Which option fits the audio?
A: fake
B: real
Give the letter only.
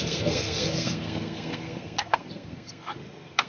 A